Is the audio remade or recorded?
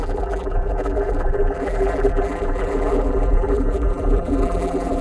remade